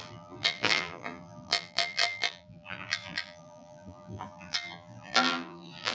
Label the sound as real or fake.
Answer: fake